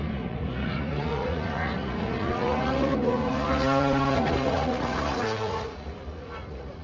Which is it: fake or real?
fake